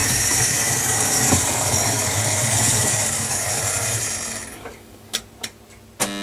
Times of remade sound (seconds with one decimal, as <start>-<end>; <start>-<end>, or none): 0.0-3.6; 4.5-5.2